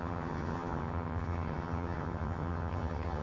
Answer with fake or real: fake